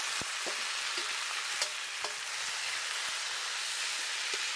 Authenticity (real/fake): real